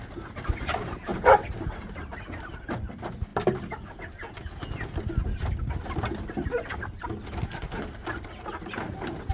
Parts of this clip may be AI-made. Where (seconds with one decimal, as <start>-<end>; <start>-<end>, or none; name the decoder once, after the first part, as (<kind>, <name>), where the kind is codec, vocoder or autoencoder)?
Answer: 1.1-2.8 (vocoder, BigVGAN v2)